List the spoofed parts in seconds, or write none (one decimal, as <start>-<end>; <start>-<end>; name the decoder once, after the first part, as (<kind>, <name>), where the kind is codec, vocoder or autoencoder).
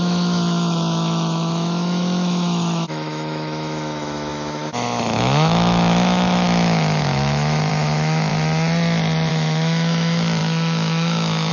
0.0-8.3 (autoencoder, DAC-VAE); 9.3-11.5